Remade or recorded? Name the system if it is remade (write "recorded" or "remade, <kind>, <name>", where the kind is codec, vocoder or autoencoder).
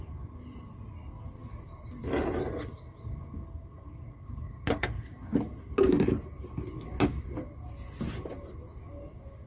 recorded